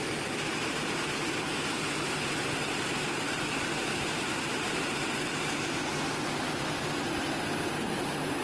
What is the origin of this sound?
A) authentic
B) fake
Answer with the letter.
B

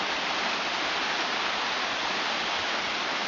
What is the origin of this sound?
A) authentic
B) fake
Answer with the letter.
A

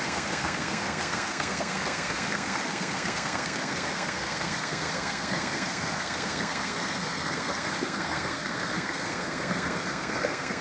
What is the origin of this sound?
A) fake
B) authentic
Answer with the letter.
A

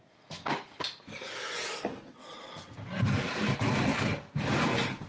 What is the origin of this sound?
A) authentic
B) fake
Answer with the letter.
A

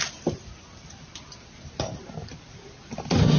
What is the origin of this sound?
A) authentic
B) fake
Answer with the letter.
B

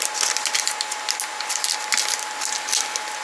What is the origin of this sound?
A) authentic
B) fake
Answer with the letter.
A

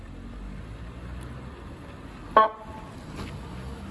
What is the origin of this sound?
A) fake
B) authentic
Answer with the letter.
B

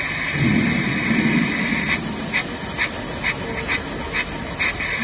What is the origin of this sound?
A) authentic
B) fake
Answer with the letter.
A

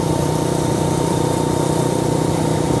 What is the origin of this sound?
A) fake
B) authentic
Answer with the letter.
A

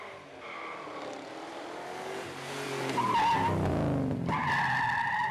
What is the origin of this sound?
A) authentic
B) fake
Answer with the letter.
A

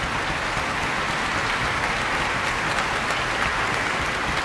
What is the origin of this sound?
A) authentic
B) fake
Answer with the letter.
A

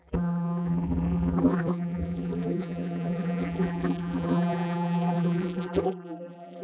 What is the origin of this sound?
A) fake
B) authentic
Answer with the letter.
A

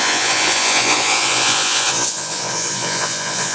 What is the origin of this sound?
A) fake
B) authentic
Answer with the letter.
A